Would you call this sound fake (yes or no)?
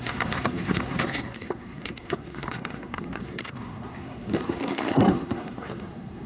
yes